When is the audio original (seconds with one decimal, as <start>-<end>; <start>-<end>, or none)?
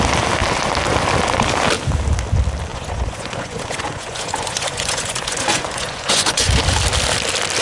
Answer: 0.0-2.7; 6.5-7.6